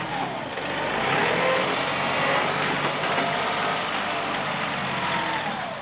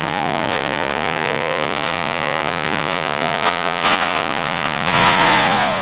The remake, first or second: second